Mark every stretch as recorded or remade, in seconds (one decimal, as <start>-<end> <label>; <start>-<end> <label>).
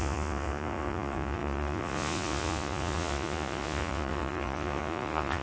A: 0.0-5.4 remade